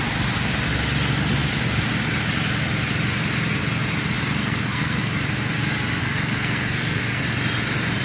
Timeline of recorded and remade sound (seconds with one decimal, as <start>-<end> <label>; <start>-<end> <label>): 0.0-4.4 recorded; 4.4-5.1 remade; 5.1-6.0 recorded; 6.0-7.2 remade; 7.2-8.0 recorded